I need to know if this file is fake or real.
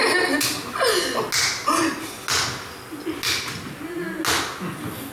real